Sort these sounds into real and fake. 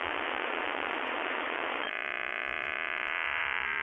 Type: fake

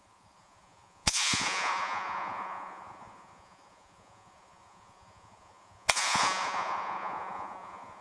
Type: fake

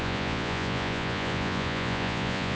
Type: fake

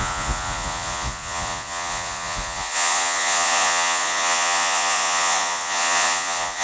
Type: fake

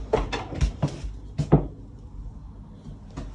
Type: real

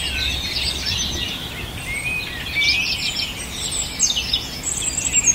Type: real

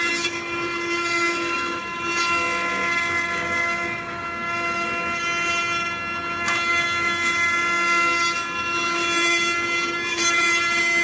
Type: real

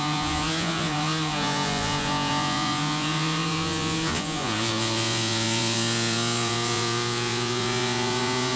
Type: fake